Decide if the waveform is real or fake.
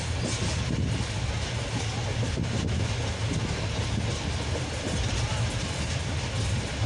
real